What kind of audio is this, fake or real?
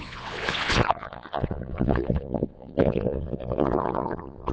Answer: fake